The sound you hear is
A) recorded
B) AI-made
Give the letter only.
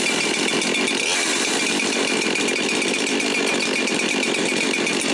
A